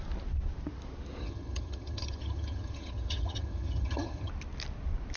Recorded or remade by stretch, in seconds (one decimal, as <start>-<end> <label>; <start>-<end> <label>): 0.0-1.2 recorded; 1.2-4.3 remade; 4.3-5.2 recorded